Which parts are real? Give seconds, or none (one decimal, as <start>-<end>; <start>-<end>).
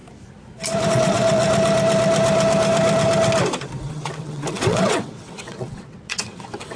0.0-0.9; 1.4-3.9